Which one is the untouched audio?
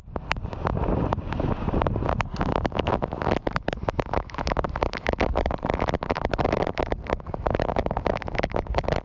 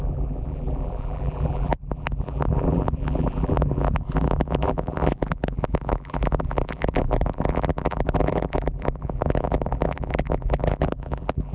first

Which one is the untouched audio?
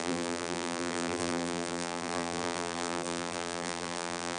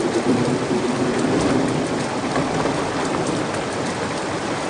second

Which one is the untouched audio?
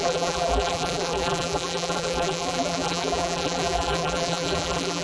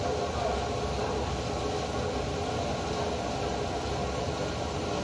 second